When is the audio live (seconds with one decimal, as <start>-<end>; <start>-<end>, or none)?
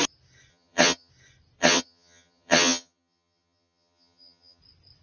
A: 0.0-0.5; 1.1-1.6; 4.6-5.0